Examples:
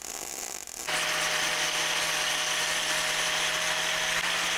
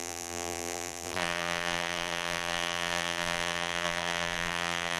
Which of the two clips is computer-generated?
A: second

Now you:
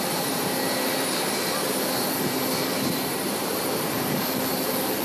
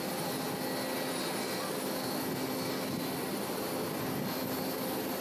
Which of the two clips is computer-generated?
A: first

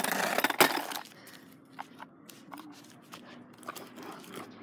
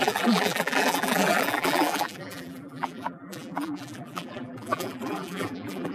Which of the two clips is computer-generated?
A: second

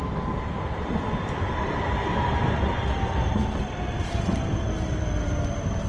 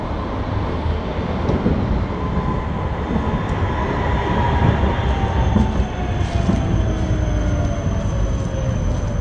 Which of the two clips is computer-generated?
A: first